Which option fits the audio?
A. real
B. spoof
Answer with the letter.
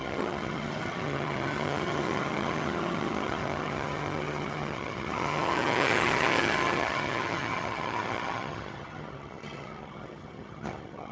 B